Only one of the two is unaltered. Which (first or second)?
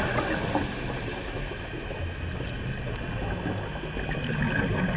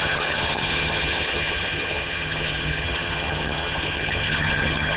first